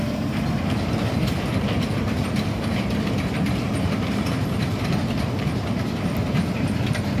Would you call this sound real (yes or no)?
no